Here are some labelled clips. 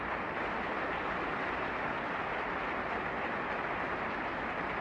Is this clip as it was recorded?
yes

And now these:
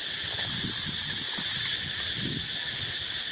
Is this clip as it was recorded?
no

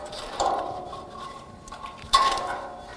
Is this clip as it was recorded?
no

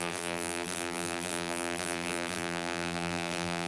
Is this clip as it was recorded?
no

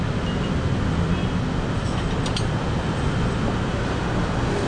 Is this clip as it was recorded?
yes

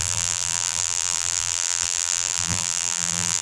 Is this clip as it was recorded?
no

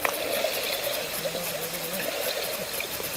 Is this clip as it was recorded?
yes